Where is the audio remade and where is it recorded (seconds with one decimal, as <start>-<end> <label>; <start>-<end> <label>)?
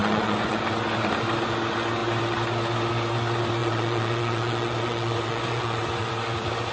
0.0-0.6 remade; 0.6-3.6 recorded; 3.6-6.1 remade; 6.1-6.7 recorded